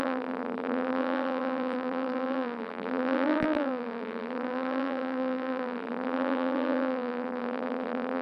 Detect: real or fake fake